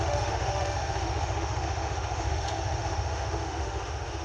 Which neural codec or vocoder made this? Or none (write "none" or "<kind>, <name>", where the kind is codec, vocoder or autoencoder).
autoencoder, DAC-VAE